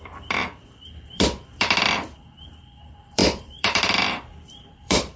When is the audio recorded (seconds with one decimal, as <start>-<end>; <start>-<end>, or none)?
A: none